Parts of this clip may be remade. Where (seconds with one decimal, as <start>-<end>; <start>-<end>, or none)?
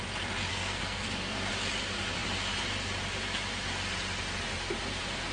0.5-1.5